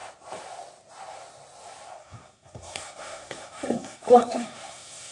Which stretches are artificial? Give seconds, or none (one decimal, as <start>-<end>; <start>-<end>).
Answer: 2.0-5.1